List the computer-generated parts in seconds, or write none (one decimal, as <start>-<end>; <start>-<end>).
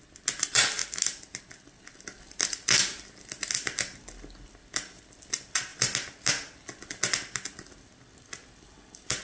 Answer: none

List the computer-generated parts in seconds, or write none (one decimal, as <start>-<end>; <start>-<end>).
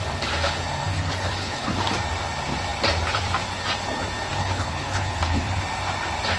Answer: 0.9-1.8; 4.4-5.6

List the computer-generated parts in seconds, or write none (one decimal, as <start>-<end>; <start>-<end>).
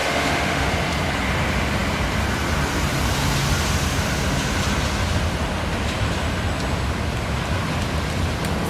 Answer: 0.0-0.7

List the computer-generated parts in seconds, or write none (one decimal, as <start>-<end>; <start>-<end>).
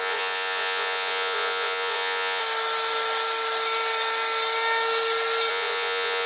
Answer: 0.0-2.4; 5.5-6.3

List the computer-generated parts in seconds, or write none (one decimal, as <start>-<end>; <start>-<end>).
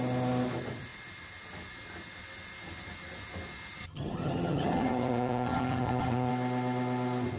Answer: 3.8-6.3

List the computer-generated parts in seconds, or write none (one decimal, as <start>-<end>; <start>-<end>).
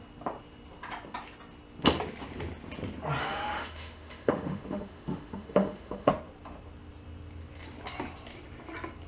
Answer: 3.2-6.1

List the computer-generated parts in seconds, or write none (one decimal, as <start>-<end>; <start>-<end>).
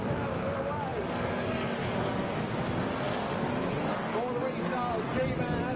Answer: none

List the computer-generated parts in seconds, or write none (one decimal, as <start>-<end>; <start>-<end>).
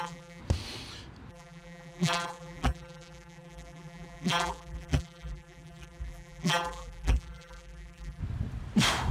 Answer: 0.0-0.4; 1.3-8.2